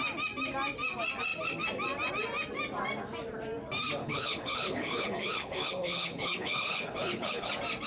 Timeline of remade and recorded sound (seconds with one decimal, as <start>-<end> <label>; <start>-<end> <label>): 0.0-4.0 recorded; 4.0-7.5 remade; 7.5-7.9 recorded